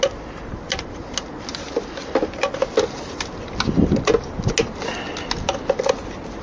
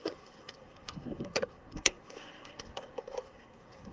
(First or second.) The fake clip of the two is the second